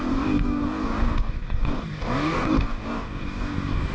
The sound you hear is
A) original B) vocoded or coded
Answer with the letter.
B